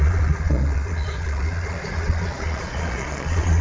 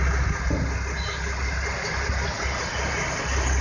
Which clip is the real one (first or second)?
second